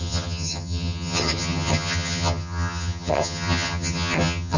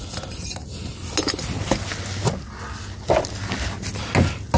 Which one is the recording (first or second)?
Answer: second